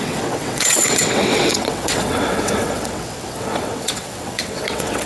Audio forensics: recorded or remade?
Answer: remade